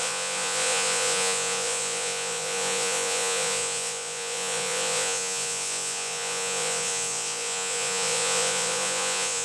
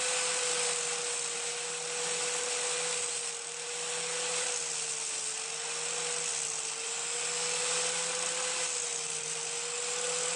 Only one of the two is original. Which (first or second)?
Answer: second